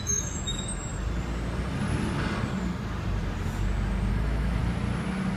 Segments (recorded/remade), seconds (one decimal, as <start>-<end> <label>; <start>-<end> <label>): 0.0-0.9 remade; 0.9-4.1 recorded; 4.1-4.6 remade; 4.6-5.4 recorded